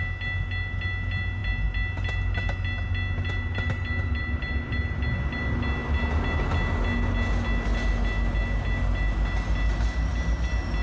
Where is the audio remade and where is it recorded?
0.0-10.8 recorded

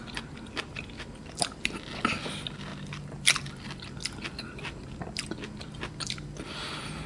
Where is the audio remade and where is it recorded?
0.0-7.1 recorded

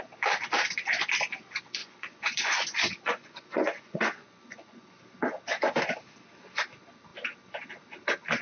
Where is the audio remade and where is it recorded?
0.0-1.8 recorded; 1.8-5.0 remade; 5.0-8.4 recorded

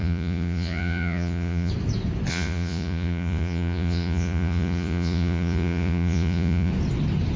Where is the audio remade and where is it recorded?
0.0-1.7 remade; 1.7-2.3 recorded; 2.3-6.7 remade; 6.7-7.4 recorded